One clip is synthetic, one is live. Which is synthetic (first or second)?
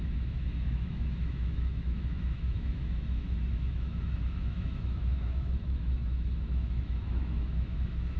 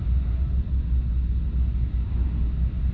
first